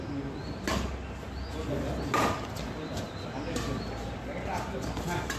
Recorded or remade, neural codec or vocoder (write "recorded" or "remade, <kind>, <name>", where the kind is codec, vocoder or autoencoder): recorded